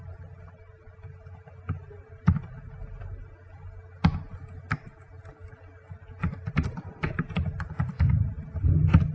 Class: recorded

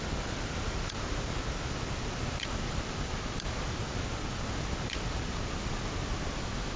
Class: recorded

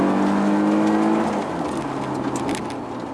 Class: recorded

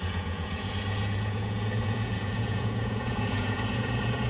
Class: remade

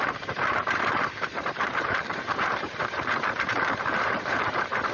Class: remade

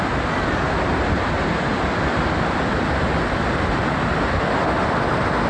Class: recorded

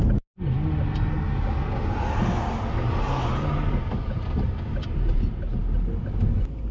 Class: recorded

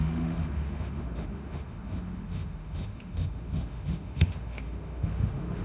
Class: remade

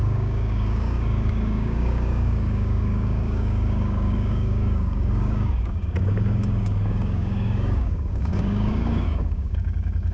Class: remade